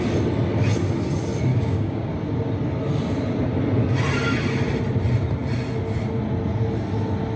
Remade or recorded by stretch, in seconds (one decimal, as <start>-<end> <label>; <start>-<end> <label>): 0.0-1.5 recorded; 1.5-2.1 remade; 2.1-7.4 recorded